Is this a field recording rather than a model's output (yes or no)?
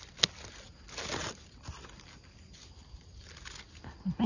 yes